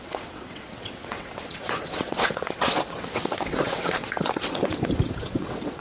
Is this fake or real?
fake